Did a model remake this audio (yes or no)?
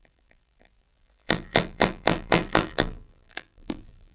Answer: yes